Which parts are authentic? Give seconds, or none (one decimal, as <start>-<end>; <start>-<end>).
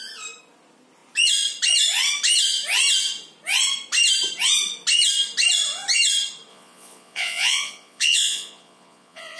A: 0.0-6.5